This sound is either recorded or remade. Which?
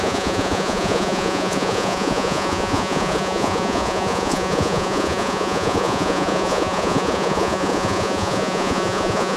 remade